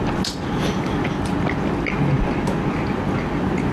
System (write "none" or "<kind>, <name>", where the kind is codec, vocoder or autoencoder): none